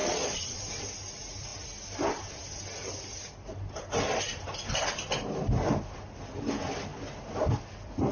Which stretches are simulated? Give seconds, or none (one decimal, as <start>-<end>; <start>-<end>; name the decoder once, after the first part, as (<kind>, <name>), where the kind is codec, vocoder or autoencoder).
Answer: 0.0-0.6 (vocoder, Vocos)

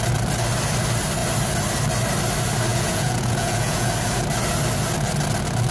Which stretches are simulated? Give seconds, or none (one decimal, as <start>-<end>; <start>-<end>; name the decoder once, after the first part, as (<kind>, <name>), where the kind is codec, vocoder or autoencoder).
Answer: 2.7-3.9 (vocoder, Vocos)

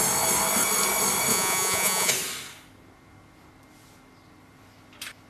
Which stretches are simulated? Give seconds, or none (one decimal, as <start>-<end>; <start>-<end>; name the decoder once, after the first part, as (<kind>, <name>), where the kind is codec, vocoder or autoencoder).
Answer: 1.3-2.1 (vocoder, Vocos)

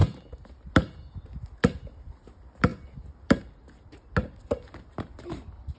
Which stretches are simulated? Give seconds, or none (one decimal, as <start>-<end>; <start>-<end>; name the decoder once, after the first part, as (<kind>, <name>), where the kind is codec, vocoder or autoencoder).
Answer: none

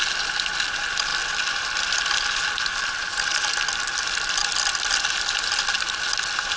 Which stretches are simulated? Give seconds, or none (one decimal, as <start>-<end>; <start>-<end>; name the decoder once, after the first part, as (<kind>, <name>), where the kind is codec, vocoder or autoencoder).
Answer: none

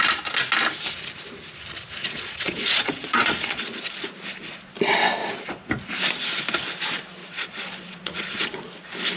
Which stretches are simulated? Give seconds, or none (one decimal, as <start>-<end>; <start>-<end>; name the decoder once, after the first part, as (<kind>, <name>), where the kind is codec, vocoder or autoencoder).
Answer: 2.0-3.8 (vocoder, Vocos); 5.2-5.7; 7.2-8.7